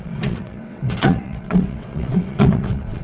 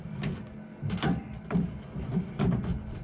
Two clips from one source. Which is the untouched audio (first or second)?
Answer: second